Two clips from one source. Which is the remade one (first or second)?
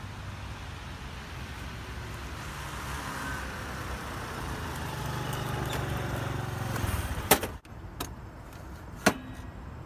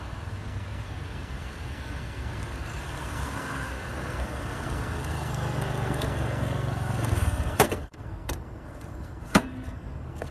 second